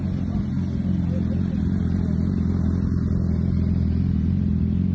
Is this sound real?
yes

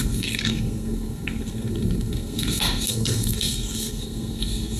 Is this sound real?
no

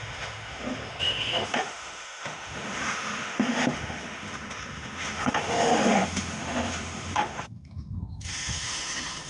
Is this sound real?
no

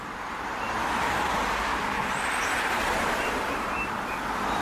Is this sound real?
yes